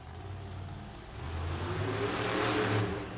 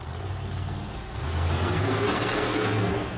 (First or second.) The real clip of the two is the first